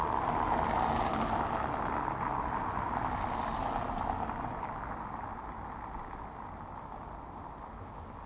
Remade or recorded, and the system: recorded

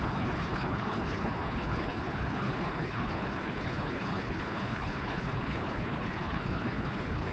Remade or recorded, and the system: remade, codec, HILCodec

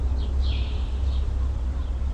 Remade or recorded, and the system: recorded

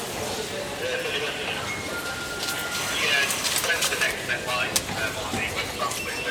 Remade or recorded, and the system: recorded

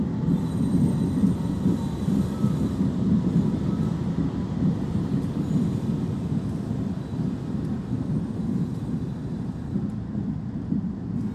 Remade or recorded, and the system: remade, vocoder, BigVGAN v2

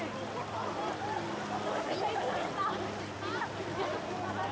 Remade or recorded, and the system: recorded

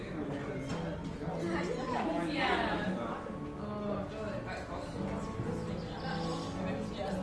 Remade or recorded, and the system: recorded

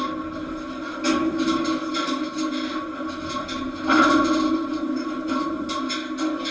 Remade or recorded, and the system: recorded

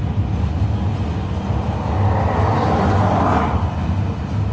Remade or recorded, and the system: recorded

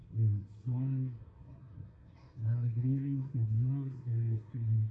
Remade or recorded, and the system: remade, codec, SNAC